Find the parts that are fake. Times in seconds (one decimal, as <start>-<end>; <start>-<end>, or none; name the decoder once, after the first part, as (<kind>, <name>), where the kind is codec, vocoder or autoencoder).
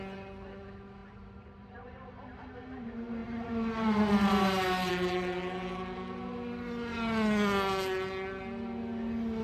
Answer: 1.0-2.1 (vocoder, BigVGAN v2); 3.2-4.9